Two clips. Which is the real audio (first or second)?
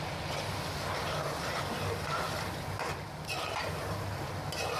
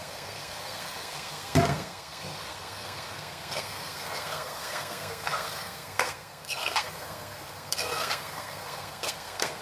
first